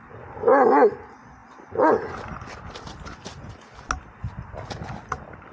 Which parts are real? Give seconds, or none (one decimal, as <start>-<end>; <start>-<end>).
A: 0.0-5.5